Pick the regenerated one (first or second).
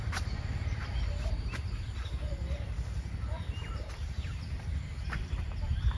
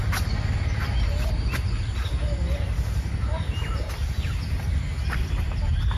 first